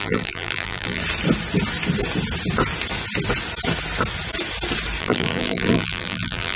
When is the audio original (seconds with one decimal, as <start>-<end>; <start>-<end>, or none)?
1.0-5.0